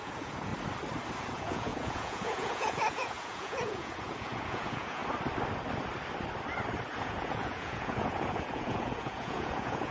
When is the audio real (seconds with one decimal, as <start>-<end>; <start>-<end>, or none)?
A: 0.5-1.2; 5.0-7.0